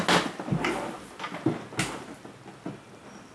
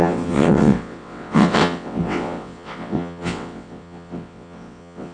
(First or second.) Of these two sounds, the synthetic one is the second